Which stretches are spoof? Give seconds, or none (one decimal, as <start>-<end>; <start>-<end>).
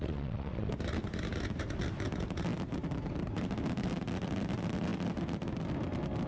0.0-0.7